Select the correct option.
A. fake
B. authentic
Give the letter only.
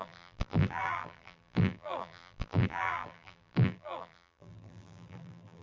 A